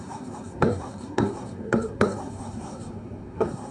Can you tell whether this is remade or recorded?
remade